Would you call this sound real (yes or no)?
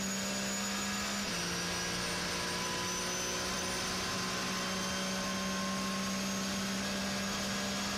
yes